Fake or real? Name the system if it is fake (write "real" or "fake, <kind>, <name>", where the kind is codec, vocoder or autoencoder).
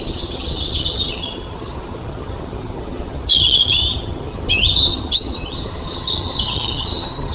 fake, vocoder, HiFi-GAN